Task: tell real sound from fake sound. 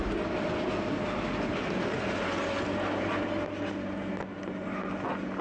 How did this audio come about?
real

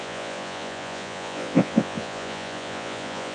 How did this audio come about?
fake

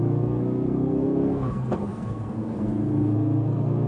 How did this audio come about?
fake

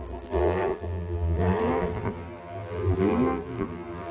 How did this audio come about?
fake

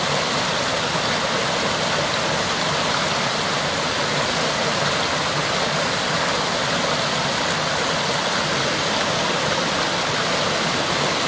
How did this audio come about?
real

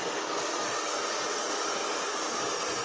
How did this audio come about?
real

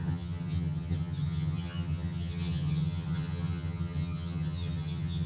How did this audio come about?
fake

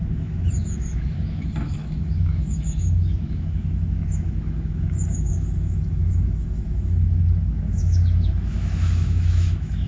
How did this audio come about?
fake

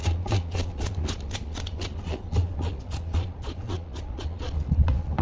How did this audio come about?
fake